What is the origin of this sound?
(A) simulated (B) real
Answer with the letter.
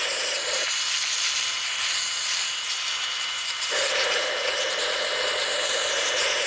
A